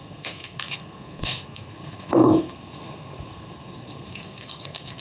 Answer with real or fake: fake